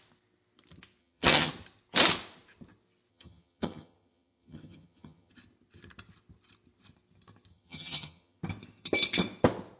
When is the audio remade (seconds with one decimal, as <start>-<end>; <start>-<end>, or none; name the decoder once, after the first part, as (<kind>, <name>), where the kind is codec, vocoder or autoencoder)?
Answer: 1.0-1.5 (vocoder, HiFi-GAN); 3.1-5.3; 7.5-8.4